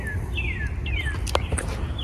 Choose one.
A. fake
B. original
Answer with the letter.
B